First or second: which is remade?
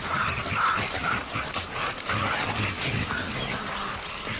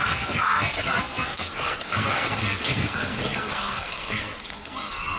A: second